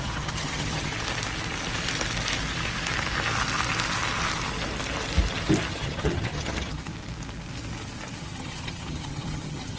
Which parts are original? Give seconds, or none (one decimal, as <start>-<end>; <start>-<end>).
0.9-5.7; 6.9-8.2

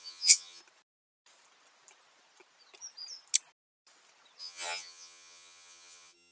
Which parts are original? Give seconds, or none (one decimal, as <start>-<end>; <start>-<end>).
0.6-4.4

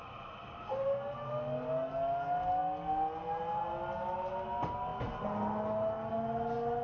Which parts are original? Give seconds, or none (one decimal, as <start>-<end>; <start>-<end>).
0.0-6.8

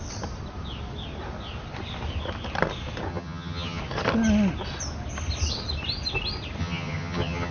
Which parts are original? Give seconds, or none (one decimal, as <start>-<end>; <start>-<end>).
0.0-3.1; 3.8-6.6

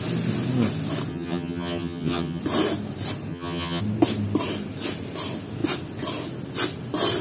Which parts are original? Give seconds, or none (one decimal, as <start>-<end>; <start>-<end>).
0.0-1.1; 2.4-3.3; 3.8-7.2

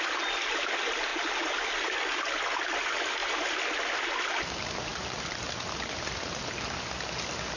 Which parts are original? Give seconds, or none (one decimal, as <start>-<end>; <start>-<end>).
0.0-7.6

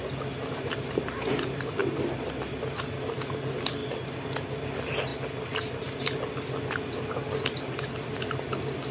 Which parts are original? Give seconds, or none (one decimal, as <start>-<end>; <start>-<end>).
0.0-8.9